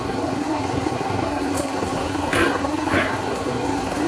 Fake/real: fake